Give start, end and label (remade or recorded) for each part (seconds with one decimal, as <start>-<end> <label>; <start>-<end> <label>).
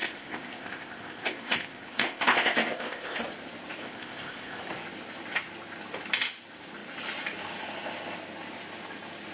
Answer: 0.0-3.2 remade; 3.2-3.8 recorded; 3.8-4.6 remade; 4.6-9.3 recorded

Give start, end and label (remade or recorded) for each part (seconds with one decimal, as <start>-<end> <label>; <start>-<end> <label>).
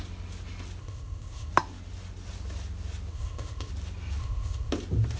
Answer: 0.0-0.8 recorded; 0.8-1.5 remade; 1.5-3.1 recorded; 3.1-3.7 remade; 3.7-4.2 recorded; 4.2-4.7 remade; 4.7-5.2 recorded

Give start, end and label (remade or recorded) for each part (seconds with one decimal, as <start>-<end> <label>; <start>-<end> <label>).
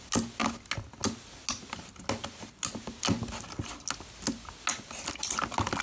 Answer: 0.0-5.8 recorded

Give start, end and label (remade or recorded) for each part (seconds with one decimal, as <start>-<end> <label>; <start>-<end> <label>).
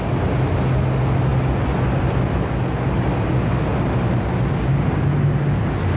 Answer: 0.0-6.0 recorded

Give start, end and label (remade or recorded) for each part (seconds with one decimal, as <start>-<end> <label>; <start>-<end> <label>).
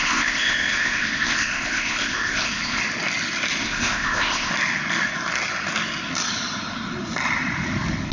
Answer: 0.0-2.8 remade; 2.8-3.6 recorded; 3.6-4.5 remade; 4.5-8.1 recorded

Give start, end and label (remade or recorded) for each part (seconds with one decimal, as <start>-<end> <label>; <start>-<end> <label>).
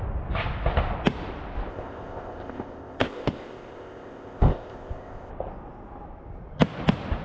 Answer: 0.0-1.7 recorded; 1.7-5.3 remade; 5.3-7.2 recorded